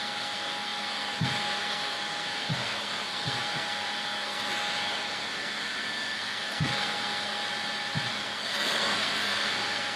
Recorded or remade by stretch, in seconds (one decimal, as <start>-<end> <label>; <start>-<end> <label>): 0.0-7.4 remade; 7.4-8.1 recorded; 8.1-10.0 remade